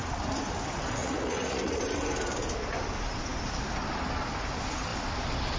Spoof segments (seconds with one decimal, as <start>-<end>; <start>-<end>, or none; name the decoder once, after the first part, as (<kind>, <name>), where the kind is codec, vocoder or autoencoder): 1.0-1.8 (vocoder, Vocos)